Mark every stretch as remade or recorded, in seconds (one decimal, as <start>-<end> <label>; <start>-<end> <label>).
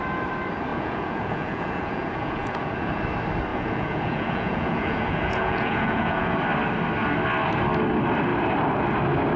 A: 0.0-0.7 recorded; 0.7-3.0 remade; 3.0-3.5 recorded; 3.5-6.4 remade; 6.4-9.4 recorded